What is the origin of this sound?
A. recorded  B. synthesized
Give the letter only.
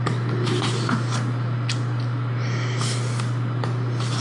A